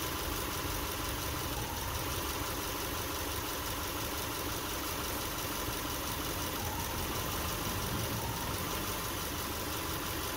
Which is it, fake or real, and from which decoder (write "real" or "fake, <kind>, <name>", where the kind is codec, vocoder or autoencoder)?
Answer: real